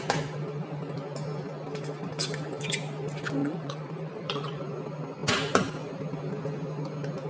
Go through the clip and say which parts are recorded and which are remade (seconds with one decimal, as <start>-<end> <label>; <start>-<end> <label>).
0.0-3.4 recorded; 3.4-4.6 remade; 4.6-7.3 recorded